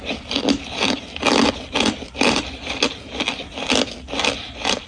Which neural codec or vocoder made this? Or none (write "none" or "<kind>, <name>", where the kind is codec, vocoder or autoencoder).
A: none